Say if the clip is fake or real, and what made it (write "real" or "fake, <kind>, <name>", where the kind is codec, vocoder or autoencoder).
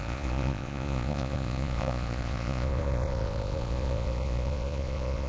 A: fake, vocoder, Vocos